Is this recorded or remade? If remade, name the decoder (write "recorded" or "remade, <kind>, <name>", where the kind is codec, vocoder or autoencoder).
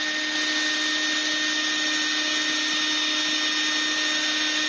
recorded